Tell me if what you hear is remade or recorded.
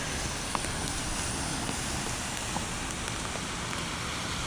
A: recorded